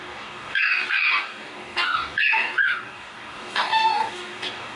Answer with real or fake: fake